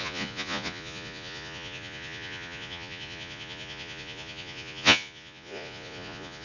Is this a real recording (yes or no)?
no